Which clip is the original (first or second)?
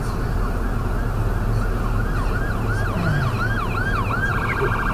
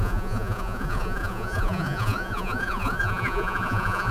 first